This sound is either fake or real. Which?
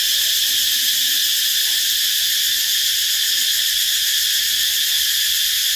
real